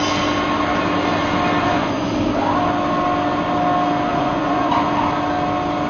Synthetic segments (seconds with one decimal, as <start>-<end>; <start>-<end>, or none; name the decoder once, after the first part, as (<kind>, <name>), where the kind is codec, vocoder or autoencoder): 1.6-2.1 (vocoder, Vocos); 4.1-4.7